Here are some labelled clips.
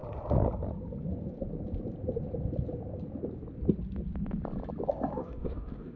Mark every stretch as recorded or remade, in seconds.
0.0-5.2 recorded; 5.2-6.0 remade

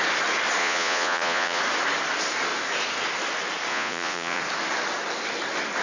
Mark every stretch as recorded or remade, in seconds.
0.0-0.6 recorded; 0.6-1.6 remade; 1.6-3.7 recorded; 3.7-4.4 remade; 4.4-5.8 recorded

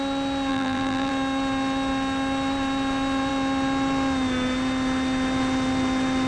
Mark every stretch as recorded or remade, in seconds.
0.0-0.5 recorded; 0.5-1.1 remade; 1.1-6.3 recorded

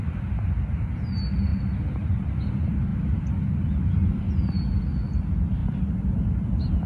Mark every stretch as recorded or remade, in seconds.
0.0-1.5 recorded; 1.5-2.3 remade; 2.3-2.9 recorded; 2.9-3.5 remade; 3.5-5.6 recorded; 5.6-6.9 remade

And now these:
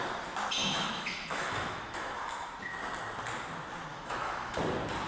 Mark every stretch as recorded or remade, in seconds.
0.0-0.6 recorded; 0.6-2.6 remade; 2.6-3.9 recorded; 3.9-4.6 remade; 4.6-5.1 recorded

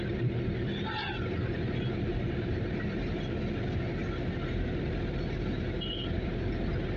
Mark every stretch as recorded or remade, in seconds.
0.0-2.1 recorded; 2.1-3.2 remade; 3.2-7.0 recorded